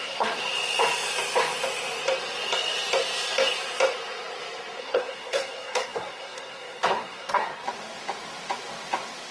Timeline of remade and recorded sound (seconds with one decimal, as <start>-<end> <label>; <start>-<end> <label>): 0.0-0.4 remade; 0.4-4.8 recorded; 4.8-7.5 remade; 7.5-9.3 recorded